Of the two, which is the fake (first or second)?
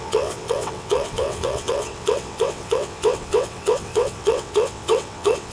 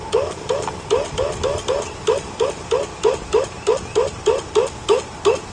first